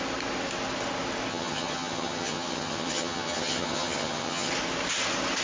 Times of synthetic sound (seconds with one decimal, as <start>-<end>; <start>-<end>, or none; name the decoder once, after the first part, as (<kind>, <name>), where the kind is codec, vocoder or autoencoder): 1.3-4.5 (vocoder, HiFi-GAN)